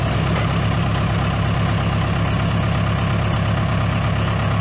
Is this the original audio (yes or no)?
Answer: yes